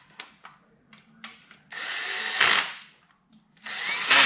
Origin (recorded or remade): recorded